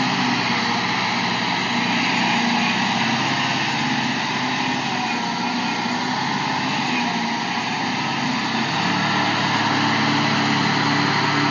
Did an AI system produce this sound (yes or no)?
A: no